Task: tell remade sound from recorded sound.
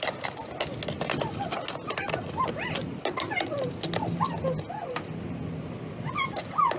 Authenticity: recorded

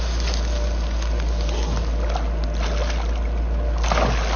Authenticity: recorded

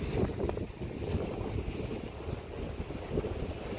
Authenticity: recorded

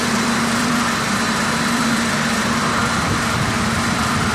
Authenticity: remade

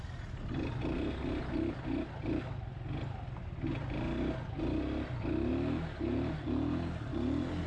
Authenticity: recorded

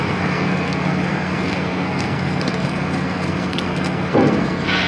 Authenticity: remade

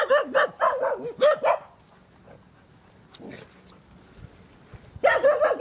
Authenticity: recorded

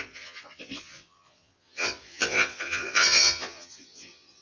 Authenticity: remade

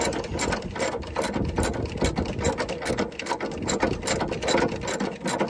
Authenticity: recorded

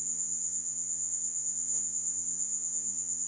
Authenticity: remade